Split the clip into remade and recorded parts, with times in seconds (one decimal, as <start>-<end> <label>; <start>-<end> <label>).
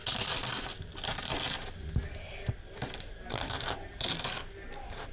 0.0-5.1 recorded